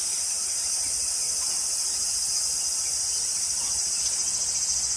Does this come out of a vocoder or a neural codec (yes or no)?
no